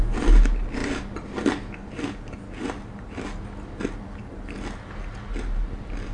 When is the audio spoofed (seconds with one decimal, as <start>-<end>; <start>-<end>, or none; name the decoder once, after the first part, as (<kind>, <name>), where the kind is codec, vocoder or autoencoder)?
none